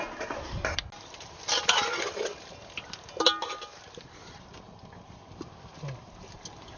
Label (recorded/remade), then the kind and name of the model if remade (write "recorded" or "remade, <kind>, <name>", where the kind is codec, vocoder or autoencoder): recorded